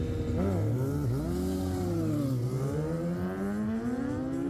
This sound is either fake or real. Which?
real